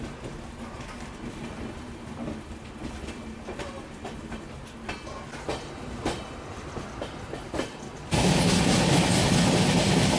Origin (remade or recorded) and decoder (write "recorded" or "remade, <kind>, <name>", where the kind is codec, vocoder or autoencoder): recorded